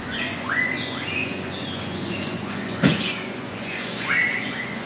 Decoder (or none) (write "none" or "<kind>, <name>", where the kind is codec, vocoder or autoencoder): vocoder, Vocos